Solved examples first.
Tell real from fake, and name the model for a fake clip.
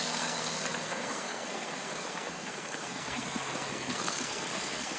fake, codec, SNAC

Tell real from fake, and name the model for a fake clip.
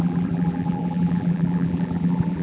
fake, vocoder, BigVGAN v2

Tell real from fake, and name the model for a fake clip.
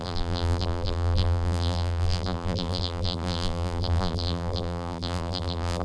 fake, vocoder, BigVGAN v2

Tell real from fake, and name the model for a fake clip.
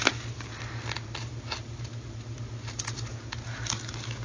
real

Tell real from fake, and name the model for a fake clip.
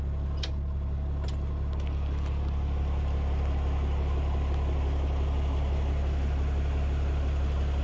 real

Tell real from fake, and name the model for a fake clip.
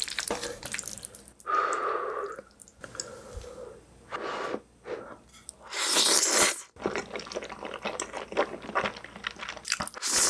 real